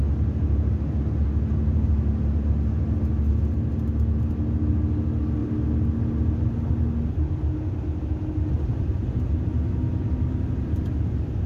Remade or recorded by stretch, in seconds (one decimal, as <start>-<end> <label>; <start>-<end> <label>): 0.0-11.5 recorded